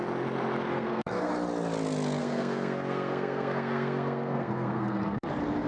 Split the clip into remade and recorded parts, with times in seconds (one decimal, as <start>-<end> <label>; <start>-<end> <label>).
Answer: 0.0-0.7 recorded; 0.7-1.3 remade; 1.3-2.2 recorded; 2.2-5.3 remade; 5.3-5.7 recorded